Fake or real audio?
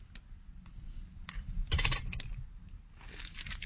real